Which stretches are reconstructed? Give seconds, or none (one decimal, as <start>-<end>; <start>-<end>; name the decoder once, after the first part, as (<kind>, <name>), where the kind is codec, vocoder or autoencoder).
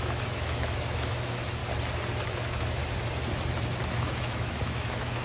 0.0-1.6 (autoencoder, DAC-VAE); 2.2-2.8; 3.9-5.2